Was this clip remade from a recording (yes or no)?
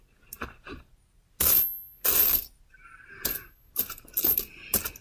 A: no